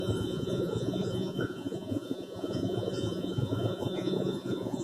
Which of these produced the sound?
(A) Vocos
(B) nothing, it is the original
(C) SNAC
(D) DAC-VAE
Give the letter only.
A